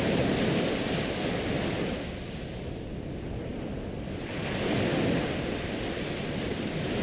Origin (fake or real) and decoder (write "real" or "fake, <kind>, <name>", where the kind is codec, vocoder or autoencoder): real